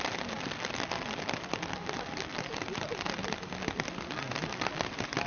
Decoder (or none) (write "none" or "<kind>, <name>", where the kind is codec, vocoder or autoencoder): none